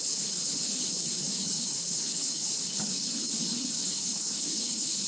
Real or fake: fake